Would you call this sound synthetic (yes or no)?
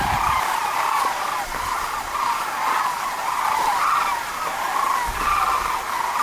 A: no